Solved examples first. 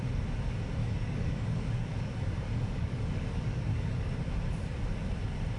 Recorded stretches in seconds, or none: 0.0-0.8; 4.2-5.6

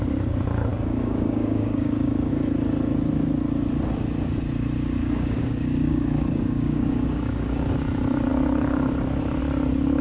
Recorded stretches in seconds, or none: 0.0-0.7; 2.3-5.0; 7.8-10.0

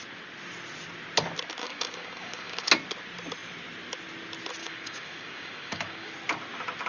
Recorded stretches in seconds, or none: 0.0-1.6; 2.7-4.6; 6.1-6.9

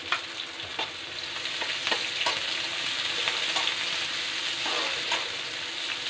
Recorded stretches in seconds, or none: 0.0-6.1

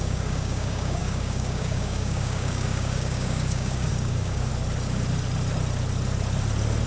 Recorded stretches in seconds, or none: 4.5-6.9

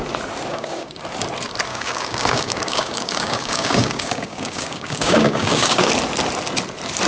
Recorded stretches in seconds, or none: 0.0-0.5; 1.0-1.7; 5.9-7.1

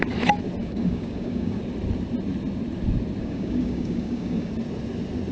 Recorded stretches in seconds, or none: 0.0-0.6; 1.6-3.2; 4.5-5.3